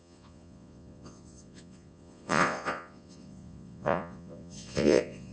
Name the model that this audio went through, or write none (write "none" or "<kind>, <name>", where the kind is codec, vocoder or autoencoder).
vocoder, Vocos